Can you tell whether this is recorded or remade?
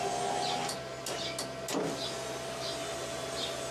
recorded